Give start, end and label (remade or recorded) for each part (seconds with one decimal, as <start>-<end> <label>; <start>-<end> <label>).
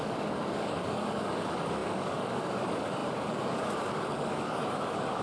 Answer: 0.0-5.2 remade